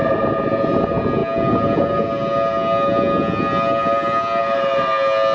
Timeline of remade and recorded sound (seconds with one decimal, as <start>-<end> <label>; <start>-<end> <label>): 0.0-5.3 recorded